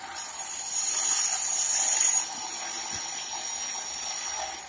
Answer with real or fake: real